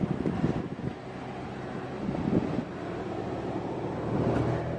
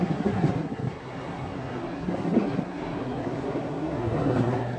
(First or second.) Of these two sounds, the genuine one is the first